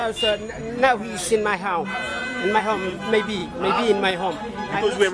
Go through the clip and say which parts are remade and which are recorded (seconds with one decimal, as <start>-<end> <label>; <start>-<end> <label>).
0.0-5.1 recorded